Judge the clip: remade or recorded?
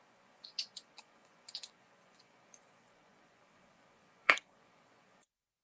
remade